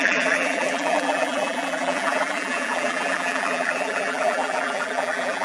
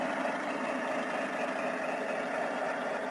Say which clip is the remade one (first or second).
first